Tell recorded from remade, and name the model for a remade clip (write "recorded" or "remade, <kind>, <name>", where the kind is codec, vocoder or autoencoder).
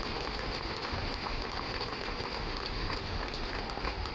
remade, autoencoder, DAC-VAE